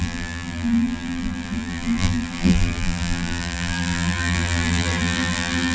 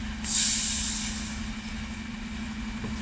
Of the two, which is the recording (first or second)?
second